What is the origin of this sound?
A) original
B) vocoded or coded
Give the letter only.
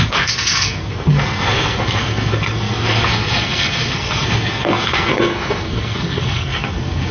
B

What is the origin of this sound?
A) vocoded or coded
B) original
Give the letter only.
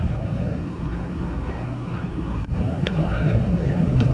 A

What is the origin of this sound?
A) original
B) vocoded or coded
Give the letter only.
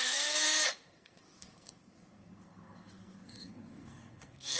B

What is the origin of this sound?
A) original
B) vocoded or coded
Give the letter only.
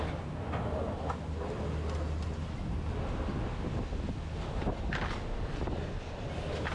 A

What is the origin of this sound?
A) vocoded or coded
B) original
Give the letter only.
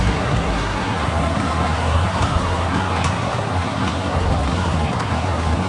A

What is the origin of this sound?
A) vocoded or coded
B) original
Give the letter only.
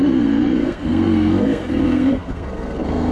A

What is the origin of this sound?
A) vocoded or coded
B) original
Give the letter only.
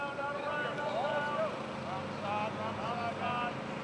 B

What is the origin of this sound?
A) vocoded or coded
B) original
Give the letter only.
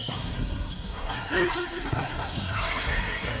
A